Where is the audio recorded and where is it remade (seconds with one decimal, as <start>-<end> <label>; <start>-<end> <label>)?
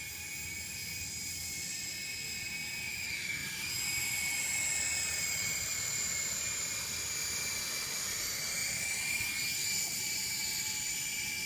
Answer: 0.0-8.6 recorded; 8.6-9.3 remade; 9.3-11.5 recorded